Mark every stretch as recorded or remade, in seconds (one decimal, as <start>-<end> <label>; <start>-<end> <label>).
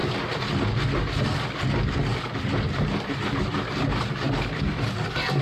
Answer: 0.0-2.1 recorded; 2.1-4.9 remade; 4.9-5.4 recorded